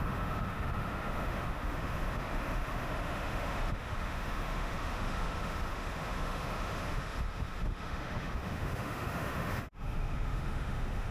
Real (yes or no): no